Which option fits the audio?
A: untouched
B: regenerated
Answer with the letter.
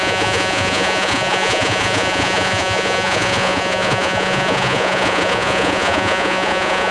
B